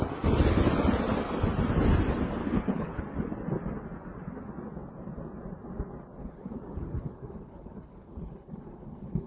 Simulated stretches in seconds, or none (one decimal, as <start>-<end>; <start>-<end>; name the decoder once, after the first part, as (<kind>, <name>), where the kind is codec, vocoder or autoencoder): 2.4-3.0 (codec, HILCodec); 6.2-9.3